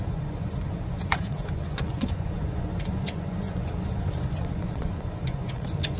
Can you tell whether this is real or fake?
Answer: fake